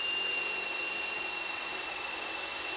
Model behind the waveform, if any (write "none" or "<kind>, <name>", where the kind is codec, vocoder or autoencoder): none